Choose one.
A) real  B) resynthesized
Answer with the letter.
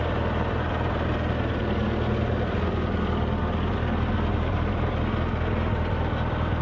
A